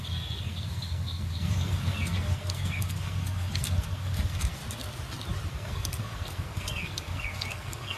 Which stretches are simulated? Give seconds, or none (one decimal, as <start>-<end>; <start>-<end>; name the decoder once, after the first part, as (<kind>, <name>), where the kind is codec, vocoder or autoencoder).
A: 0.0-4.6 (codec, SNAC); 5.5-8.0